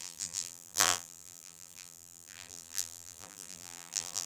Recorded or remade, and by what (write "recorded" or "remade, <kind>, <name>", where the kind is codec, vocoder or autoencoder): remade, vocoder, BigVGAN v2